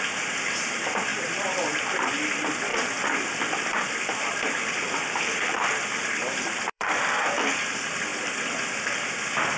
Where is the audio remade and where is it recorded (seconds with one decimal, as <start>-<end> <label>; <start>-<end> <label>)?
0.0-1.1 recorded; 1.1-1.6 remade; 1.6-2.7 recorded; 2.7-6.9 remade; 6.9-9.6 recorded